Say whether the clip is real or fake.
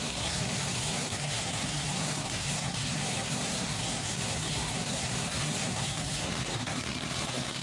fake